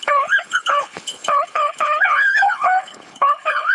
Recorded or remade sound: remade